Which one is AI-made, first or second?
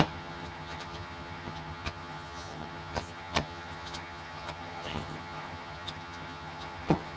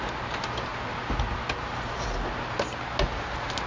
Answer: first